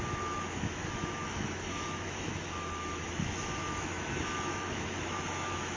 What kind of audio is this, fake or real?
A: fake